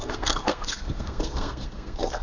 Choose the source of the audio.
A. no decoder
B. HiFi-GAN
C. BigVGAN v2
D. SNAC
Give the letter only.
D